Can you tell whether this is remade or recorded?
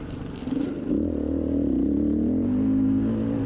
recorded